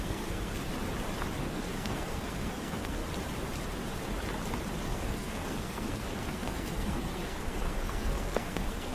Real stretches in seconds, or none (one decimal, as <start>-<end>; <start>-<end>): 0.7-1.4; 3.0-4.8